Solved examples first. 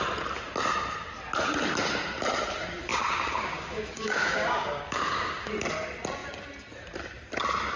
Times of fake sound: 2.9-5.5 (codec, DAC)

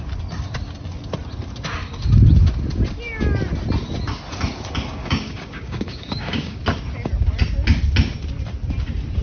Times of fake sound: 5.0-6.6 (codec, DAC)